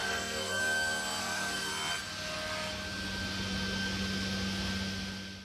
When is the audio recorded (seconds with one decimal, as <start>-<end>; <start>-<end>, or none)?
0.6-1.2; 1.7-5.4

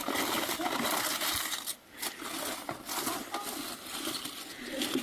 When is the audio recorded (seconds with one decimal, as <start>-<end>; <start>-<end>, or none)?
0.0-5.0

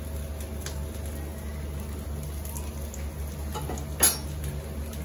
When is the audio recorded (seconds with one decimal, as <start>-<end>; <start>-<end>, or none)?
0.0-5.0

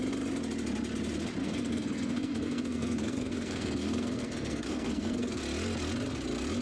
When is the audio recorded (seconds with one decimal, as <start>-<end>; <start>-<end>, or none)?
0.0-1.4; 5.4-6.6